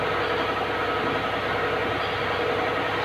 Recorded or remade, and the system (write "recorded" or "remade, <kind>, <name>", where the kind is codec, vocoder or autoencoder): recorded